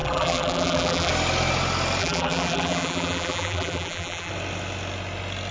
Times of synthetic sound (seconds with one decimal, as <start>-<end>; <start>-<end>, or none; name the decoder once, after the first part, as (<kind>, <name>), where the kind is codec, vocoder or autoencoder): 0.0-1.1 (vocoder, BigVGAN v2); 2.0-4.3